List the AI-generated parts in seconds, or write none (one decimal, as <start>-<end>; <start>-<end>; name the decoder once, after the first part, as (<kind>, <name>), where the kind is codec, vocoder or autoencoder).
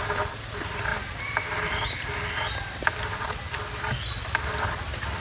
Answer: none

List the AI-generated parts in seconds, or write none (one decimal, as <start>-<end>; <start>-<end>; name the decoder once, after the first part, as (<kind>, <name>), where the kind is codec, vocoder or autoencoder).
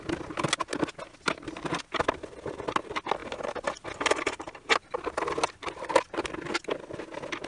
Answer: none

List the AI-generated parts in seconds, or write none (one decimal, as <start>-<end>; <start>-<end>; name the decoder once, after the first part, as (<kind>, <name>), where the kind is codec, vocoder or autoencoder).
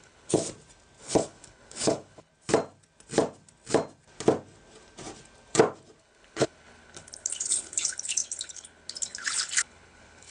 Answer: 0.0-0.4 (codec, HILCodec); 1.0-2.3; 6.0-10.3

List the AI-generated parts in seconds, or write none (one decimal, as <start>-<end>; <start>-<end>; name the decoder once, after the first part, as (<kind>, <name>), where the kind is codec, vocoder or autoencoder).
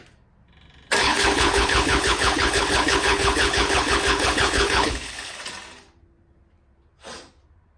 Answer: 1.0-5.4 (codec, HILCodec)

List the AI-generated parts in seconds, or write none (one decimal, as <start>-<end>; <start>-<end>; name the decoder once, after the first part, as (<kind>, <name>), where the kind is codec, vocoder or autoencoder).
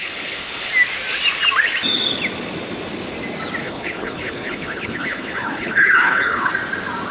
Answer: 0.0-0.7 (codec, HILCodec); 3.6-6.5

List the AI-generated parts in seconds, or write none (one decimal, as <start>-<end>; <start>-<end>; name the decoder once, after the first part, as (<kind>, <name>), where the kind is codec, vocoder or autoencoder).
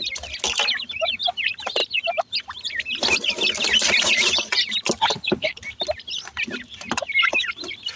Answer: 5.0-5.6 (codec, HILCodec)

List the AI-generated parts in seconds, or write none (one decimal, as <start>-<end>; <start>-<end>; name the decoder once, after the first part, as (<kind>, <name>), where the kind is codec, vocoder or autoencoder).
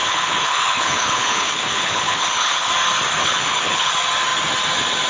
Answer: 0.0-2.7 (codec, HILCodec); 3.2-3.9